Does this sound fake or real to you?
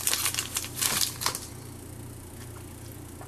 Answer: fake